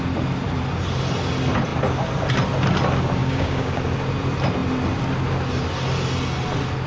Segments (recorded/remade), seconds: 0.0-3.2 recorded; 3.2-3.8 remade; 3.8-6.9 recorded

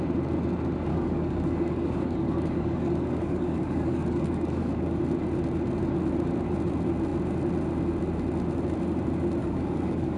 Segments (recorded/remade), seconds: 0.0-0.9 recorded; 0.9-5.0 remade; 5.0-9.4 recorded; 9.4-10.2 remade

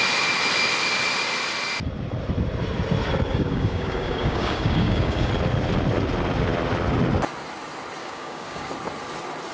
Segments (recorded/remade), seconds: 0.0-3.3 recorded; 3.3-5.3 remade; 5.3-8.0 recorded; 8.0-8.7 remade; 8.7-9.5 recorded

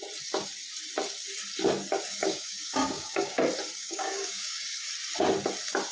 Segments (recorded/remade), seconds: 0.0-2.1 recorded; 2.1-3.4 remade; 3.4-3.8 recorded; 3.8-4.9 remade; 4.9-5.9 recorded

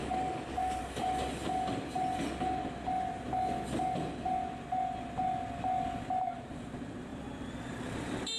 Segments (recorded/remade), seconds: 0.0-0.8 remade; 0.8-8.4 recorded

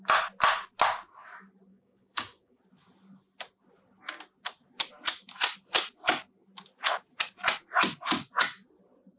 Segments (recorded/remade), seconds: 0.0-1.7 recorded; 1.7-2.6 remade; 2.6-9.2 recorded

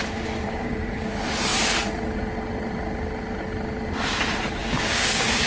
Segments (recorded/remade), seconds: 0.0-0.5 recorded; 0.5-1.1 remade; 1.1-4.6 recorded; 4.6-5.5 remade